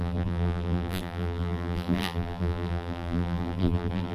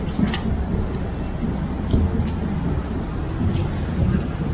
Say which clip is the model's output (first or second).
first